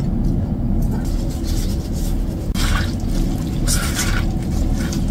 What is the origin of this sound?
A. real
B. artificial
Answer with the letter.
A